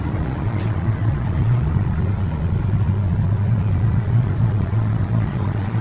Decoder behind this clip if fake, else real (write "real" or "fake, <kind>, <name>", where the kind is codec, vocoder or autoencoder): fake, vocoder, Vocos